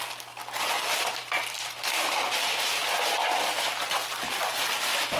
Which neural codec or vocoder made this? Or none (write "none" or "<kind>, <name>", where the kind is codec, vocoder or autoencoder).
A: none